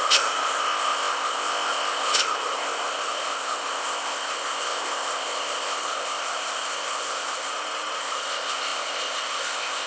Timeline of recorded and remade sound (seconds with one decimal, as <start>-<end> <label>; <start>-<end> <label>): 0.0-7.5 remade; 7.5-8.0 recorded; 8.0-9.9 remade

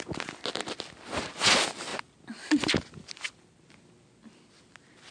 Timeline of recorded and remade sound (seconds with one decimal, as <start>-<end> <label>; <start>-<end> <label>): 0.0-5.1 recorded

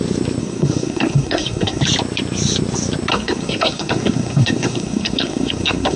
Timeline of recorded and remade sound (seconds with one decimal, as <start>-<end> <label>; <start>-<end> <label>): 0.0-0.4 recorded; 0.4-1.8 remade; 1.8-3.1 recorded; 3.1-6.0 remade

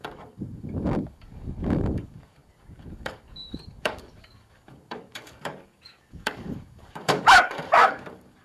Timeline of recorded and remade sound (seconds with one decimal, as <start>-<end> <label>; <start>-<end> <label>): 0.0-8.4 remade